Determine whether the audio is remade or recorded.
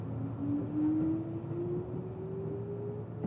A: recorded